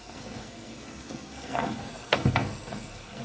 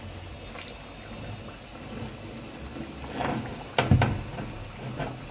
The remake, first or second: first